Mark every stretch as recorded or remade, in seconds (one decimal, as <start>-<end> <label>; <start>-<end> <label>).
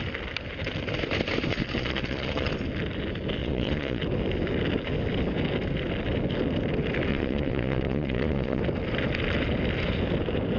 0.0-1.5 recorded; 1.5-2.5 remade; 2.5-3.4 recorded; 3.4-4.0 remade; 4.0-7.1 recorded; 7.1-8.6 remade; 8.6-10.6 recorded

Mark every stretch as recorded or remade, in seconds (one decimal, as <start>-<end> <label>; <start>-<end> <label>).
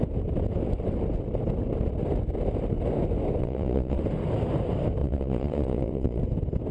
0.0-3.4 recorded; 3.4-4.0 remade; 4.0-5.0 recorded; 5.0-6.2 remade; 6.2-6.7 recorded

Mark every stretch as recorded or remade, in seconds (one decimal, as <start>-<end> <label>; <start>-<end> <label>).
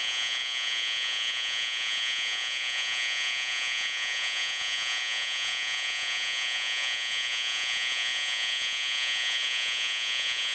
0.0-10.5 remade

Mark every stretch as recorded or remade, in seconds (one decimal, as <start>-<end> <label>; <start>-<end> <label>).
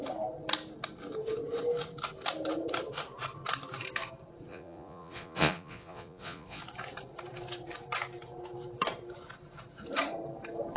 0.0-4.5 recorded; 4.5-6.6 remade; 6.6-10.8 recorded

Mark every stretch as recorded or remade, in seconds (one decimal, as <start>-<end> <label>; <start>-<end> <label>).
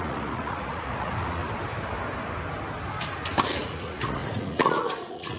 0.0-1.4 remade; 1.4-3.5 recorded; 3.5-5.4 remade